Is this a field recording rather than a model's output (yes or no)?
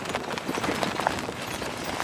yes